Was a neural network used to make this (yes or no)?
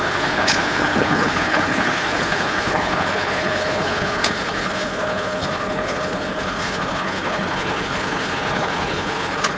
yes